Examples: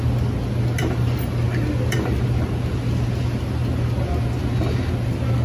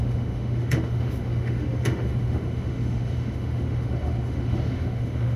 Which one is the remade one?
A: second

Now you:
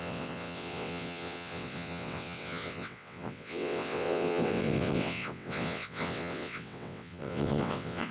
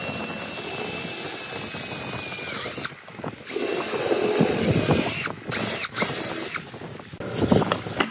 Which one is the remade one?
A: first